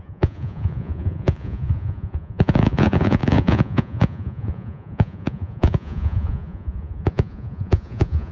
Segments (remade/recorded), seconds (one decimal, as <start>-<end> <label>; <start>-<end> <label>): 0.0-8.3 remade